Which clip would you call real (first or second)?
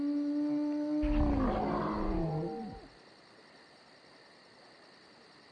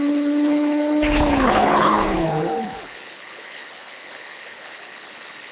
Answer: first